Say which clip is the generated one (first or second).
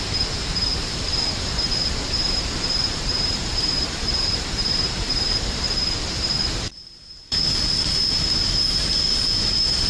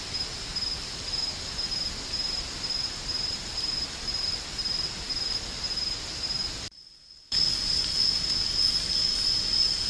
first